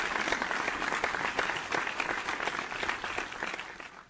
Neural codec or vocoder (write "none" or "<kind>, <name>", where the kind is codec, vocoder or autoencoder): none